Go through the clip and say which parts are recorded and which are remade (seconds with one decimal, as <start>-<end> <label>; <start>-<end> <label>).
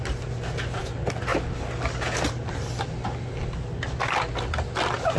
0.0-5.2 recorded